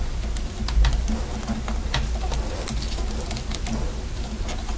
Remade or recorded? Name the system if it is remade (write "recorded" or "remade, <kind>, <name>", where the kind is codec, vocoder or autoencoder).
recorded